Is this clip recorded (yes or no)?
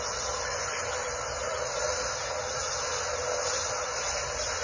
yes